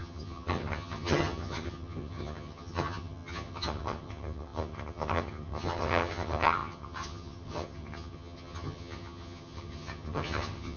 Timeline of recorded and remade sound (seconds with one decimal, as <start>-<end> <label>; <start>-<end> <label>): 0.0-10.8 remade